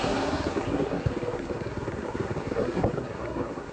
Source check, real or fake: fake